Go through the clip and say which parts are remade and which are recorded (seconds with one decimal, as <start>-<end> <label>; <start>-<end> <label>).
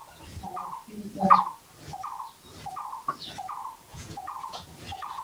0.0-3.9 recorded; 3.9-4.6 remade; 4.6-5.2 recorded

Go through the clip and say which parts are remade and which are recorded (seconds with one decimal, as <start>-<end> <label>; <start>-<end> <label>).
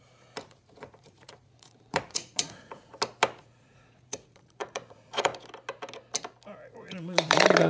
0.0-2.9 remade; 2.9-3.4 recorded; 3.4-5.3 remade; 5.3-6.7 recorded; 6.7-7.7 remade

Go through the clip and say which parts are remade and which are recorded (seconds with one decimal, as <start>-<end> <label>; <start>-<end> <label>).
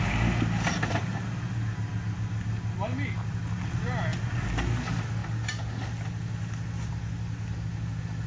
0.0-8.3 recorded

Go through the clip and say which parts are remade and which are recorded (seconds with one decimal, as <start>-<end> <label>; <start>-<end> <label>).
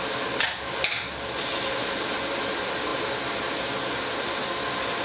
0.0-5.0 recorded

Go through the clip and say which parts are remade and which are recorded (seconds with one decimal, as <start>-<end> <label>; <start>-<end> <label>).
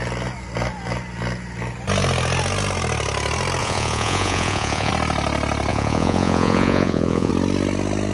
0.0-3.6 recorded; 3.6-4.9 remade; 4.9-5.7 recorded; 5.7-7.3 remade; 7.3-8.1 recorded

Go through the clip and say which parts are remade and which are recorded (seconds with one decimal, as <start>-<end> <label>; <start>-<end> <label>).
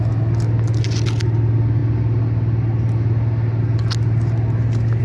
0.0-5.0 recorded